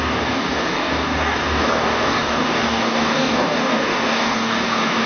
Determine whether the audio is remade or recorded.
remade